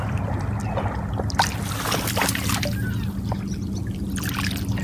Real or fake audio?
real